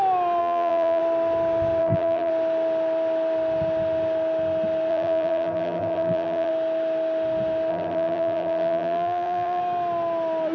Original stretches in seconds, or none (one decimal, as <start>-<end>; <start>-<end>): 0.0-0.4; 1.0-1.8; 2.3-4.9; 6.5-7.7; 9.6-10.5